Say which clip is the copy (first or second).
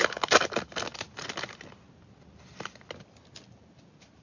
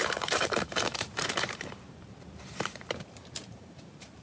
second